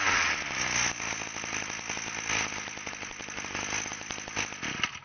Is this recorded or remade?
recorded